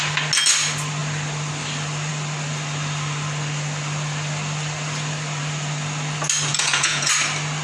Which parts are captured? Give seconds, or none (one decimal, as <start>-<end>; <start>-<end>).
0.0-6.5; 7.1-7.6